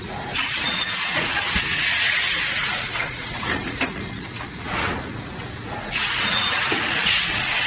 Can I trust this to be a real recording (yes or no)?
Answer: no